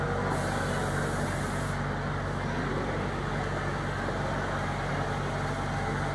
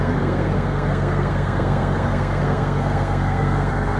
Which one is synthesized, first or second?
second